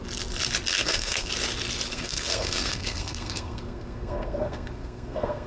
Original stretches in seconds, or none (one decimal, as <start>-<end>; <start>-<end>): 0.0-0.7; 1.3-1.9